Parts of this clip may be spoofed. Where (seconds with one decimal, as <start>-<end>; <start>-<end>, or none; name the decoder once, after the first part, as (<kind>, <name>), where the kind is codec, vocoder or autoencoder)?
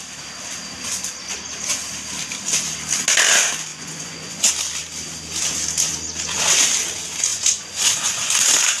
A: 3.7-4.5 (vocoder, Vocos); 7.3-8.3